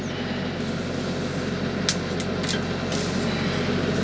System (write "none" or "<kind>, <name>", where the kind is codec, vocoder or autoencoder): none